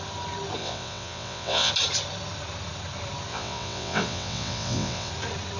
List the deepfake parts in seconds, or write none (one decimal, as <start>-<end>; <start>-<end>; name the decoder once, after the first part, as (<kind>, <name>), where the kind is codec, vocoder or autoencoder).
0.6-1.7 (vocoder, WaveNeXt); 3.3-5.1